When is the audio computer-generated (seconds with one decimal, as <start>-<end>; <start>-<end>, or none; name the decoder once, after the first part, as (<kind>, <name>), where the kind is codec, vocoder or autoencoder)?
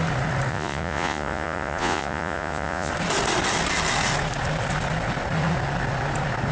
0.5-2.9 (vocoder, Vocos)